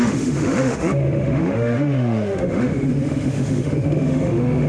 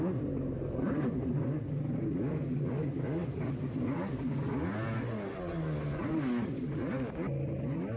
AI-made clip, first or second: first